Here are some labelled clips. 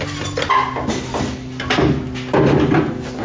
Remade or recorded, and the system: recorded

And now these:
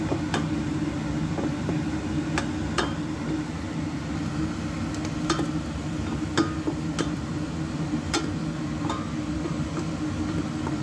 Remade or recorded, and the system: recorded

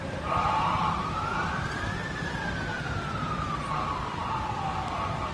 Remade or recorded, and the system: recorded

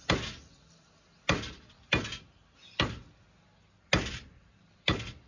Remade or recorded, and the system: recorded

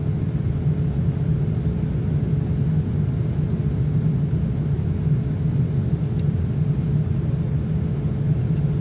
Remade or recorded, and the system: recorded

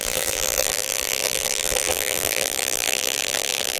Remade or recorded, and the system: remade, vocoder, BigVGAN v2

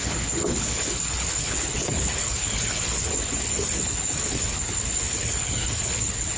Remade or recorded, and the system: remade, codec, HILCodec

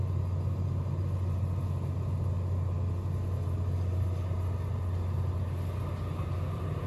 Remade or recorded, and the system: recorded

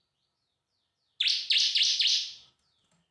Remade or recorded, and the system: recorded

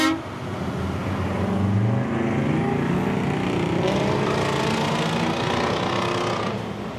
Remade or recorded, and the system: recorded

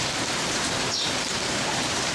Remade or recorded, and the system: remade, vocoder, BigVGAN v2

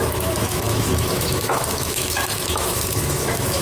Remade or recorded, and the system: remade, autoencoder, DAC-VAE